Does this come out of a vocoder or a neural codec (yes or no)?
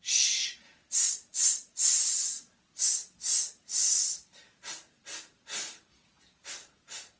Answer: no